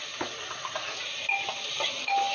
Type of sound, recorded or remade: recorded